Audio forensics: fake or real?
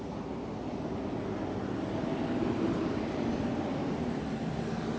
real